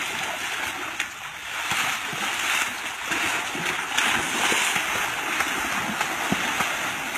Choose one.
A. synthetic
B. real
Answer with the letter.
B